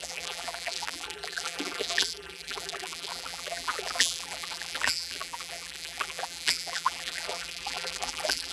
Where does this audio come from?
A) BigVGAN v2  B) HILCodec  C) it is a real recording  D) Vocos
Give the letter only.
A